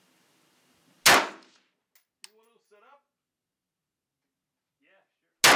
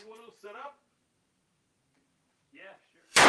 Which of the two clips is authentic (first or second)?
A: first